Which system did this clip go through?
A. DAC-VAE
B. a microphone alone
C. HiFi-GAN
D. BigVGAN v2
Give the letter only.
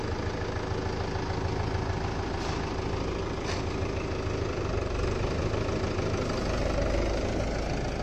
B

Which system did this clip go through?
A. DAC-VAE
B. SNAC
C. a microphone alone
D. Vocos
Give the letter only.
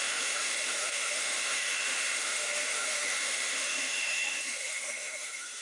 A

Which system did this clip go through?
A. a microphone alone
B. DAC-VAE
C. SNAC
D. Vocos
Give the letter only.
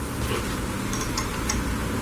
A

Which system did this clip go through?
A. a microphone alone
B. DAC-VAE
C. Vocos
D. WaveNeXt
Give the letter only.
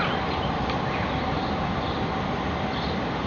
A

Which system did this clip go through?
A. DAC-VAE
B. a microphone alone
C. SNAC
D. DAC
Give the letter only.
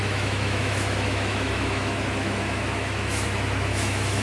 A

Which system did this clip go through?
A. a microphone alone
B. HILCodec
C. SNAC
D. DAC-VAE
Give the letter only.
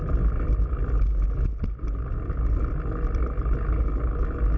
A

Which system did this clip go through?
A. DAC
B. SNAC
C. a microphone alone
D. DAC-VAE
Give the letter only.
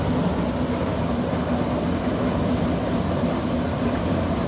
C